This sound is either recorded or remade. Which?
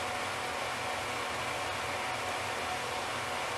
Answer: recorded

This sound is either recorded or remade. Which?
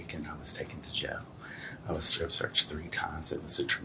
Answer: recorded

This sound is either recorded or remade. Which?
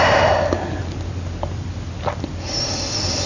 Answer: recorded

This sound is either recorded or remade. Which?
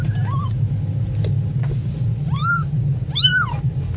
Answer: recorded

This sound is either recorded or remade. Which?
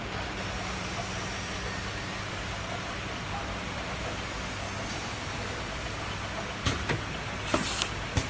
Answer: recorded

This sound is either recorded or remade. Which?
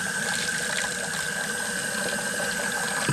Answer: recorded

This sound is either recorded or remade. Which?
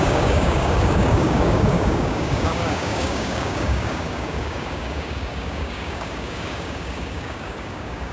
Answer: remade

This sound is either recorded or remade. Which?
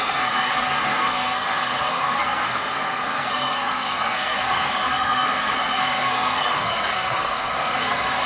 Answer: remade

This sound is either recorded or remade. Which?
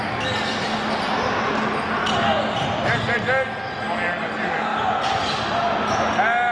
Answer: recorded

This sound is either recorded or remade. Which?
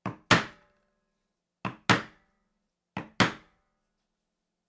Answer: recorded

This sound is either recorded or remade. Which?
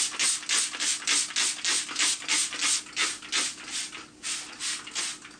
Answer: recorded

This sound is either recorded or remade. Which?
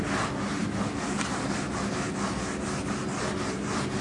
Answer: recorded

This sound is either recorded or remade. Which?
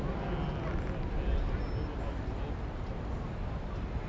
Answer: recorded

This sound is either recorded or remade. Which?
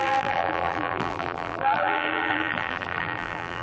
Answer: remade